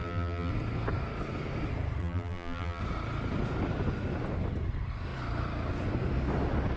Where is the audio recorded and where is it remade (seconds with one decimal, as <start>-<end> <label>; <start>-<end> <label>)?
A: 0.0-0.5 remade; 0.5-2.0 recorded; 2.0-2.8 remade; 2.8-6.8 recorded